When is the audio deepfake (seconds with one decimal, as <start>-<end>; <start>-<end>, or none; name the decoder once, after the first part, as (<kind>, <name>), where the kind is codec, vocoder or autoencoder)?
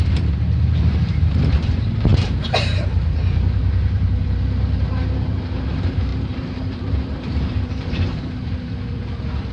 0.0-9.5 (vocoder, BigVGAN v2)